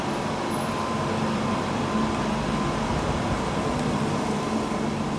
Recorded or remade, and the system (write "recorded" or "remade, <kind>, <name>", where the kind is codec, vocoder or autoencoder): recorded